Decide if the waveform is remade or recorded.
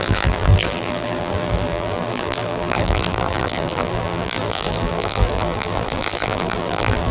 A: remade